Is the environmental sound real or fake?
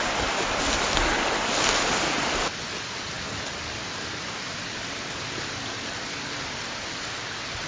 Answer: real